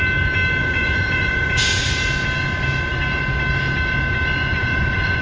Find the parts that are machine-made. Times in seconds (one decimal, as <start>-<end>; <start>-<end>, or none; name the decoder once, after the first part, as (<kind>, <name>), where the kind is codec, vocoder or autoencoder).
0.6-1.6 (vocoder, Vocos); 4.4-5.2